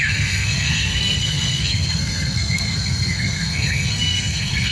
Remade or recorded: remade